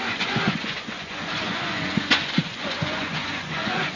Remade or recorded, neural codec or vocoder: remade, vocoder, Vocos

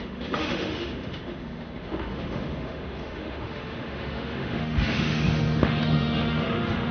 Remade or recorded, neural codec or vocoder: remade, autoencoder, DAC-VAE